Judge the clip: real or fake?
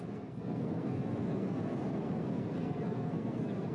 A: fake